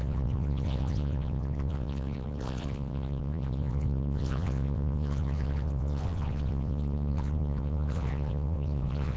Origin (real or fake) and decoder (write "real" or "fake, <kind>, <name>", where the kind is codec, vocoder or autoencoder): fake, vocoder, WaveNeXt